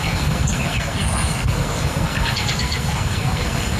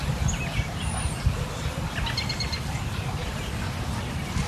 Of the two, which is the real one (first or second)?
second